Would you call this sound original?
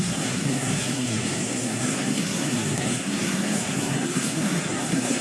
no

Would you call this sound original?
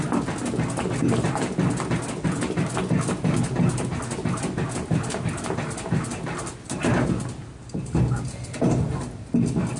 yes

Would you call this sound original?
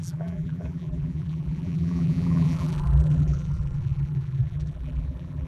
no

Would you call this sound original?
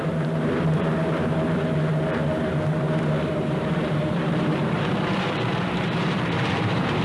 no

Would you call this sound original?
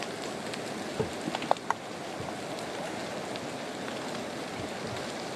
yes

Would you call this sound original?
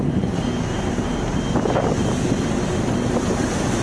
yes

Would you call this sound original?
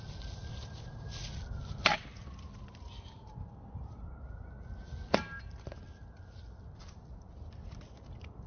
yes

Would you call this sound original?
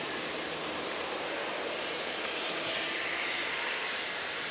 no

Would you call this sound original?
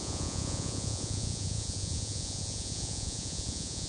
no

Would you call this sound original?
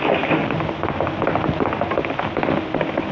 yes